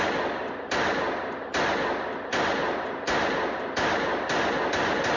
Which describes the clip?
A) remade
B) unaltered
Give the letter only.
B